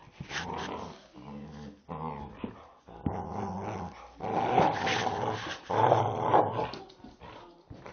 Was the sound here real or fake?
real